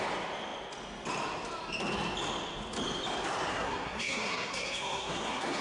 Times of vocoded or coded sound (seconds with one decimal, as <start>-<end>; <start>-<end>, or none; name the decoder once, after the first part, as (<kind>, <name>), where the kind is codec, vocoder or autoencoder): 3.5-5.6 (codec, SNAC)